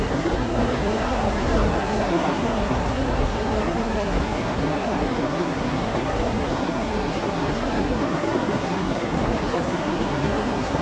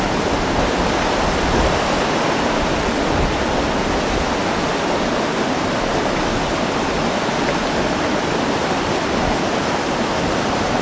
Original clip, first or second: second